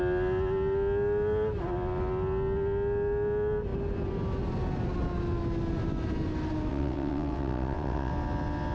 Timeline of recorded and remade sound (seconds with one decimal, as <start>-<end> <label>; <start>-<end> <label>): 0.0-6.7 recorded; 6.7-8.1 remade; 8.1-8.7 recorded